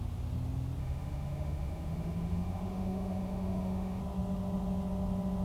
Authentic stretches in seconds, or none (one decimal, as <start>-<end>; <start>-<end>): 0.0-0.8; 4.0-5.4